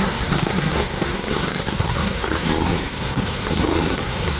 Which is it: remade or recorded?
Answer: remade